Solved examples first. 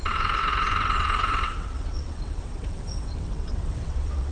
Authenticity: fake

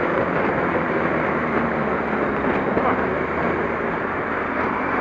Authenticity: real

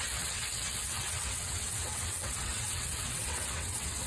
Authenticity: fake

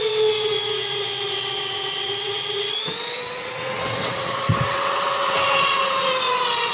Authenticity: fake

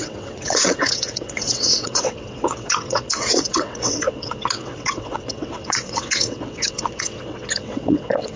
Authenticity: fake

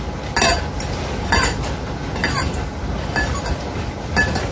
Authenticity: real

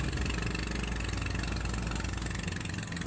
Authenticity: real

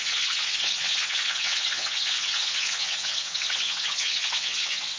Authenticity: fake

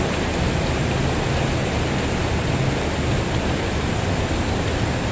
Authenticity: real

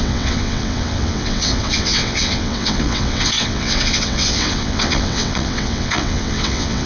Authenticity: fake